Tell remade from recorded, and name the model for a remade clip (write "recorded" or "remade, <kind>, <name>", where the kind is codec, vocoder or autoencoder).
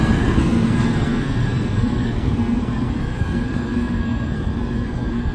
remade, codec, SNAC